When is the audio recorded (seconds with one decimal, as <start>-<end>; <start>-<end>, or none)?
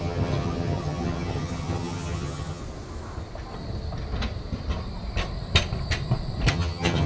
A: 2.6-6.5